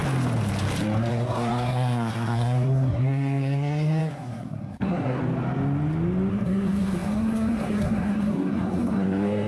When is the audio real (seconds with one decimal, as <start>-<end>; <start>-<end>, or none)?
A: 0.0-1.1; 5.2-6.3